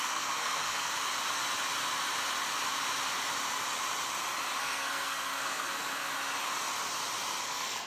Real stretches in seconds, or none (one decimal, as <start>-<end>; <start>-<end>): 0.9-4.6; 6.1-7.4